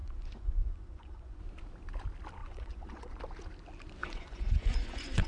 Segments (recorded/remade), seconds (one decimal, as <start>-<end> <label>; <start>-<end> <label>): 0.0-1.4 remade; 1.4-2.4 recorded; 2.4-3.2 remade; 3.2-4.0 recorded; 4.0-5.3 remade